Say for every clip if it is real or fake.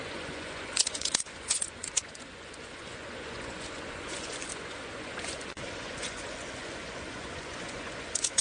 fake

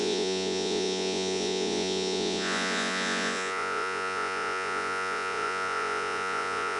fake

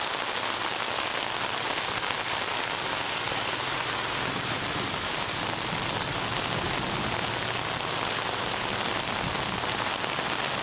real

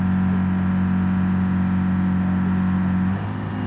real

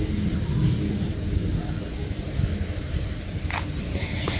real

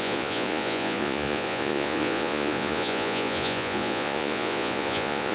fake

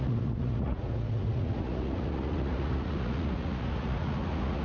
fake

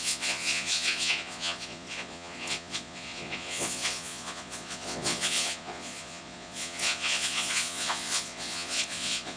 fake